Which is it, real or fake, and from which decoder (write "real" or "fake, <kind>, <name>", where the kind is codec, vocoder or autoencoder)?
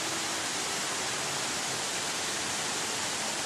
real